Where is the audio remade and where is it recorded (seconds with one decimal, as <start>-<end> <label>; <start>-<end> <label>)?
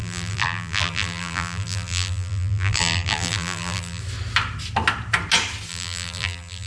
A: 0.0-4.0 remade; 4.0-5.7 recorded; 5.7-6.7 remade